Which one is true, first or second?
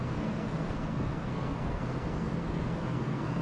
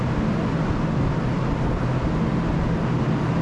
second